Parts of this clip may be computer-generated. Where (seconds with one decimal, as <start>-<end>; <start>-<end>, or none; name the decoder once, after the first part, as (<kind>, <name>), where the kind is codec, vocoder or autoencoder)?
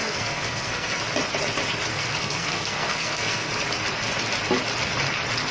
0.0-1.0 (codec, SNAC); 1.9-3.5